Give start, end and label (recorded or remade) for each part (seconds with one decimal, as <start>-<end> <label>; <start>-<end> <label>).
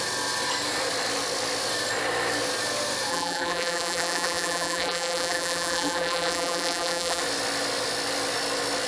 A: 0.0-3.1 recorded; 3.1-7.2 remade; 7.2-8.9 recorded